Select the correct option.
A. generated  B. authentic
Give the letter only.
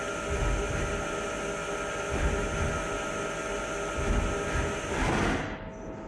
B